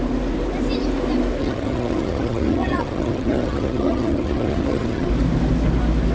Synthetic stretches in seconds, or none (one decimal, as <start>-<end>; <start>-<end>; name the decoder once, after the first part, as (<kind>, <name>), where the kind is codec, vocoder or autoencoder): 1.4-5.1 (vocoder, HiFi-GAN)